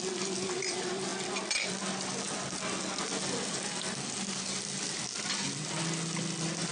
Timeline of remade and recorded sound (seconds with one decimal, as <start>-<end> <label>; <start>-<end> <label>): 0.0-6.7 recorded